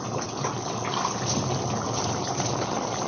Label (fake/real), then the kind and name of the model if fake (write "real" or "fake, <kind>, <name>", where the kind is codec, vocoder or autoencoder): real